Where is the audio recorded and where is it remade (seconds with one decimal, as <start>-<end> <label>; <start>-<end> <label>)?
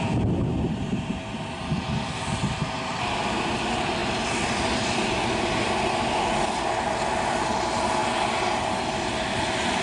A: 0.0-9.8 recorded